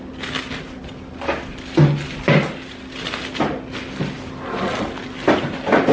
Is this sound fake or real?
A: real